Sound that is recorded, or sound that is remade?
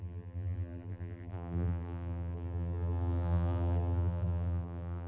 remade